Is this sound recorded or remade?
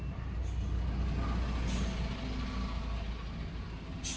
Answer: recorded